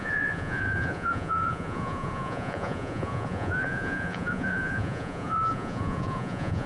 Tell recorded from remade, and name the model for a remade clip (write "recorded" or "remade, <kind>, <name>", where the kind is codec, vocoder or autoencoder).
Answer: remade, vocoder, Vocos